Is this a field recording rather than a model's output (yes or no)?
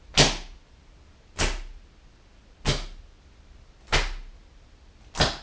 yes